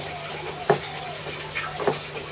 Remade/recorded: recorded